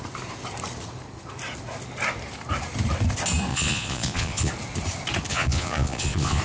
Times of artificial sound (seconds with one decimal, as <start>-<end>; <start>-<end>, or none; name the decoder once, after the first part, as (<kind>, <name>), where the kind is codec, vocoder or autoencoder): 3.5-4.5 (vocoder, Vocos); 5.3-6.4